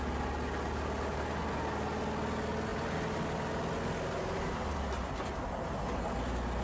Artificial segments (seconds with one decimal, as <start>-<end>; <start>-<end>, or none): none